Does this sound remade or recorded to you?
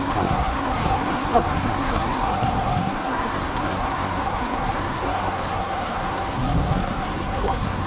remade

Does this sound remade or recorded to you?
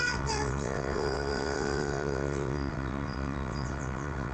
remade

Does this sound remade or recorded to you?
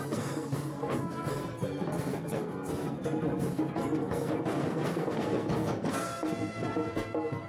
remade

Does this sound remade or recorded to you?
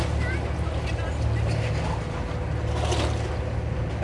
recorded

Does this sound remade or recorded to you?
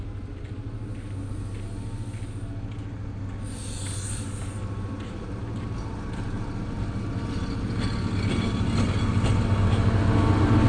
recorded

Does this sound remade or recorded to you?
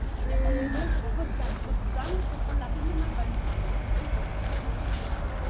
recorded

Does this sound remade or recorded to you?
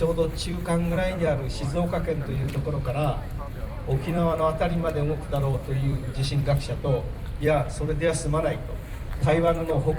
remade